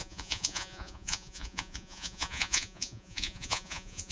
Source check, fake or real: fake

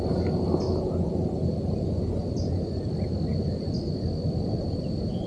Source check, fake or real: real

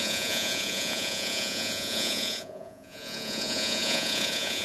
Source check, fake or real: fake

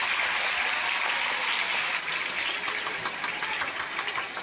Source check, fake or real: real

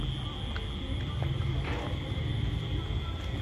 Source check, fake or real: real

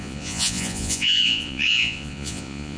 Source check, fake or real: fake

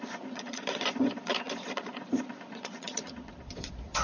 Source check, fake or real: fake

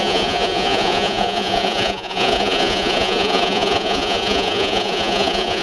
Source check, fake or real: fake